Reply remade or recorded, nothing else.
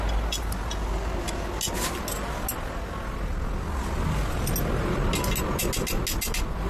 recorded